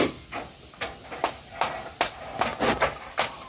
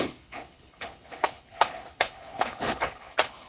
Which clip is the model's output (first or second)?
second